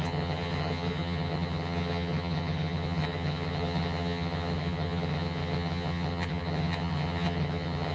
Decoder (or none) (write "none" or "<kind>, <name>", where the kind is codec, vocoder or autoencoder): vocoder, HiFi-GAN